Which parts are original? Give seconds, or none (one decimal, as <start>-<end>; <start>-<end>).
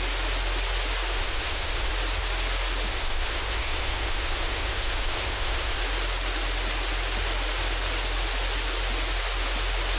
0.0-1.2; 1.9-2.9; 5.8-10.0